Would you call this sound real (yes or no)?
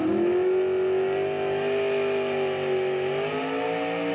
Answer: yes